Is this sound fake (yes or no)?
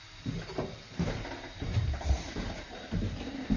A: yes